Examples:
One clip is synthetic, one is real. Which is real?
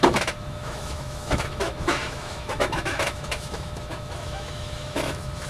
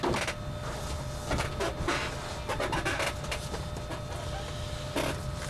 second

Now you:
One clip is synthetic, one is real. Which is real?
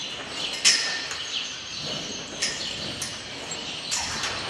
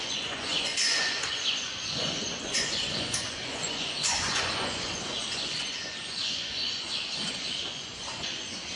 first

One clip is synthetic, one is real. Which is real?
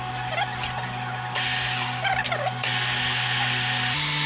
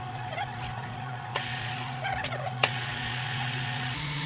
first